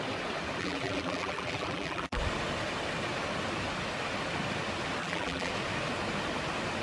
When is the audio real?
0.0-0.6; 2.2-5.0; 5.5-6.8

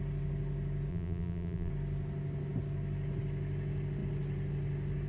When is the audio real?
0.0-0.9; 1.7-5.1

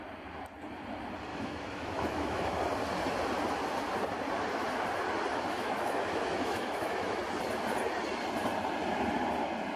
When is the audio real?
0.0-1.3; 2.6-5.3; 7.2-9.8

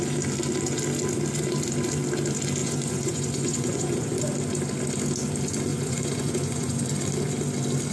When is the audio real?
0.0-2.6; 4.3-5.7; 6.8-7.9

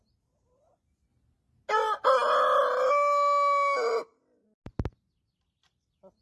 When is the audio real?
0.0-6.2

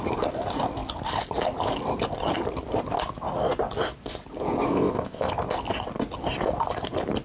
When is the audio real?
0.0-4.7; 5.3-7.2